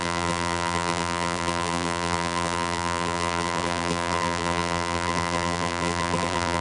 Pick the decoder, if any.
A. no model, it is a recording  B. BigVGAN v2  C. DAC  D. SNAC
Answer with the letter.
B